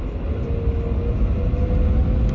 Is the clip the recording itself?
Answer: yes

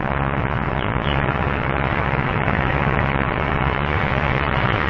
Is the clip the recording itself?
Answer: no